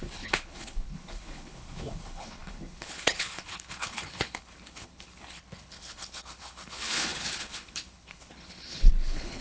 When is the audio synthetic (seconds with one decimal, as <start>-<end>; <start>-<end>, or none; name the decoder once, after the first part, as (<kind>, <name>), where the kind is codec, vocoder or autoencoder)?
0.0-9.4 (codec, HILCodec)